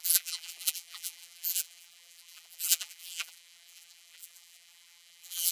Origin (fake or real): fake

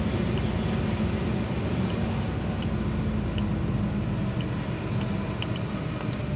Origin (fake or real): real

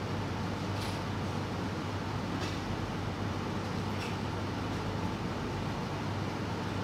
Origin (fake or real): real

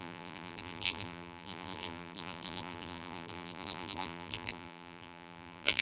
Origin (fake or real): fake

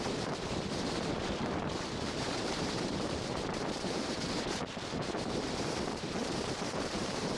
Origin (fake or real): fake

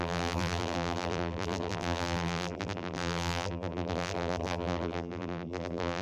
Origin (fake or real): fake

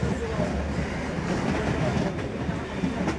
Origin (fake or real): real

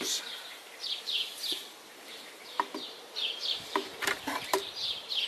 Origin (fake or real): fake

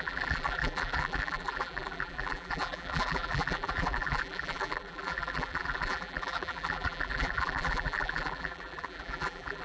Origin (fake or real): fake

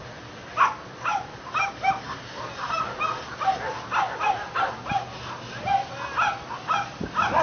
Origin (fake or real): real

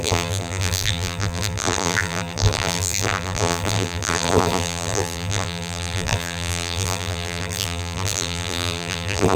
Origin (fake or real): fake